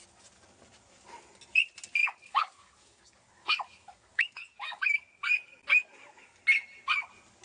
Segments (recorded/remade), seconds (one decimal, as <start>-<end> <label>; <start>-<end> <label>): 0.0-2.0 recorded; 2.0-6.4 remade; 6.4-7.4 recorded